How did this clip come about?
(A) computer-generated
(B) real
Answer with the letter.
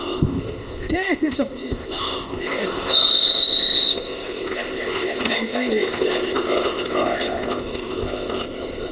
A